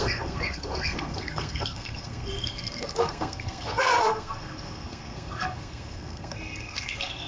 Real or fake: fake